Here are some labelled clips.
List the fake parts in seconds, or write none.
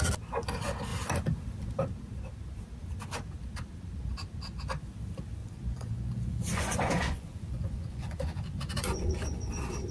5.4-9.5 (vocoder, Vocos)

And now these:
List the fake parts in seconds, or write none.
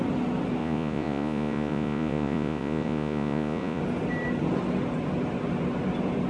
0.6-3.8 (vocoder, Vocos)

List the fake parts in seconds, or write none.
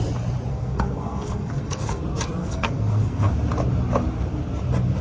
0.5-2.0 (codec, SNAC); 2.4-3.3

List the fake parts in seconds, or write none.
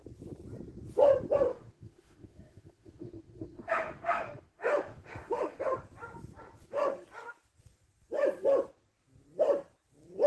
1.5-5.6 (autoencoder, DAC-VAE)